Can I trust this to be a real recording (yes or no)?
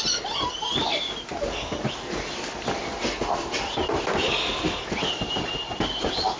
yes